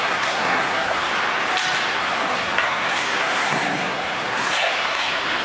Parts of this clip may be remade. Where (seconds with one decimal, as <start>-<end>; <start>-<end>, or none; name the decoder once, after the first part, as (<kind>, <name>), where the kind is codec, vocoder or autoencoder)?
0.0-1.1 (codec, SNAC); 1.9-5.4